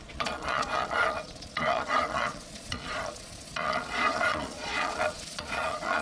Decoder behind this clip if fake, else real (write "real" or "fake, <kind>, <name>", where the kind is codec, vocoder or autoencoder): fake, vocoder, Vocos